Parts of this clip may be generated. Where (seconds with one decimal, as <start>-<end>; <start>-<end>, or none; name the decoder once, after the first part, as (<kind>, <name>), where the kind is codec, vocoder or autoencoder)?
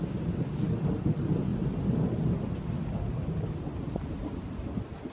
none